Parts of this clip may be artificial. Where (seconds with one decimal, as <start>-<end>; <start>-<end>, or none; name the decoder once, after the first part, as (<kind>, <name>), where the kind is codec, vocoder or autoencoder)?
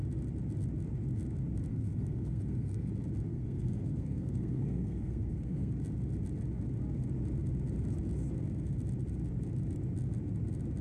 1.7-2.9 (codec, SNAC); 3.3-5.7